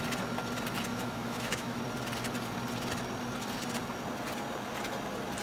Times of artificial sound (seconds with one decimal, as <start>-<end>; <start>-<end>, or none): 0.9-1.8